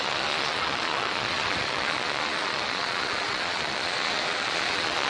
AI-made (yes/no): yes